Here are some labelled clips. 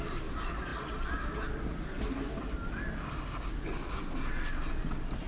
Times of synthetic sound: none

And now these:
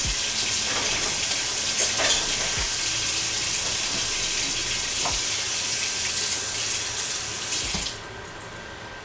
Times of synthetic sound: none

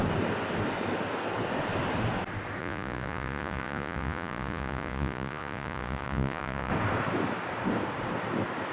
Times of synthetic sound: 2.6-6.7

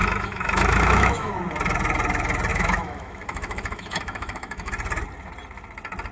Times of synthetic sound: 0.0-1.3; 2.5-4.7

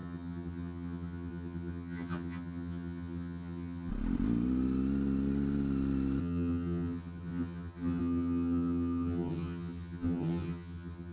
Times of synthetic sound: 0.0-3.9; 6.2-11.1